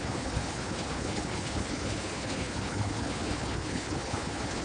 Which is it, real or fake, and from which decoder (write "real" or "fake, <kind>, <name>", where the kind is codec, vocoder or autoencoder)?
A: fake, codec, HILCodec